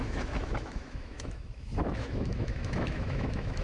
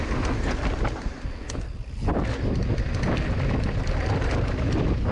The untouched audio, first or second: second